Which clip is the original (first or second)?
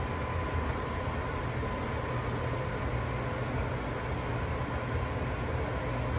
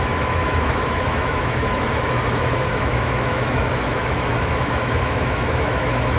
first